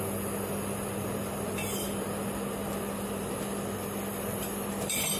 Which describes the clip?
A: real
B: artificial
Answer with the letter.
B